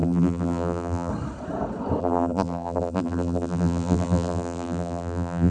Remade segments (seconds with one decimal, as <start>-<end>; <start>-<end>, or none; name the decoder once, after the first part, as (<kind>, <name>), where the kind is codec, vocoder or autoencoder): 0.0-1.1 (vocoder, BigVGAN v2); 2.0-5.5